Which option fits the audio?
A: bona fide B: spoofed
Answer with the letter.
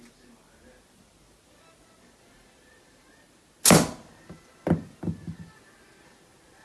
A